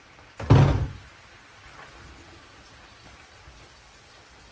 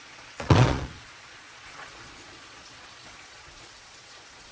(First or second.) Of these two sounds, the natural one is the first